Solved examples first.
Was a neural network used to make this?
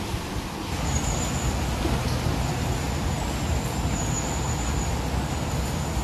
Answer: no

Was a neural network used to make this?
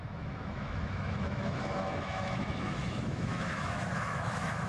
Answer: yes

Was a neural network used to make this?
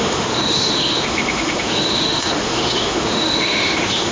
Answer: yes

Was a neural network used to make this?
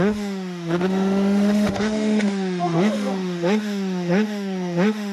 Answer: yes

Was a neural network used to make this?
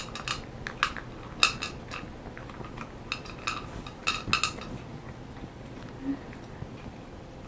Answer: no